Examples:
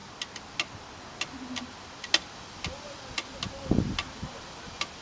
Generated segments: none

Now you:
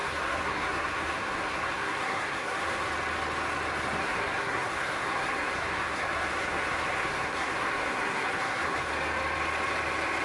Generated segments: 0.0-2.9 (codec, SNAC); 4.0-8.9

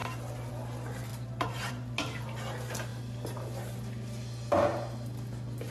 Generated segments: none

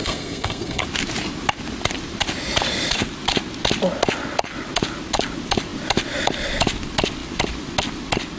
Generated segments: 0.0-0.8 (codec, SNAC)

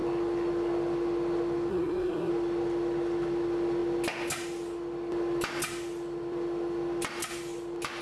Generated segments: 1.7-2.3 (codec, SNAC)

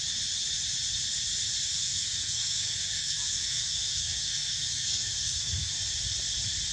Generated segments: 1.7-5.7 (codec, SNAC)

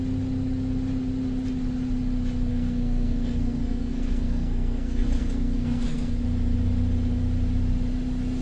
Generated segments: 2.5-6.2 (codec, SNAC)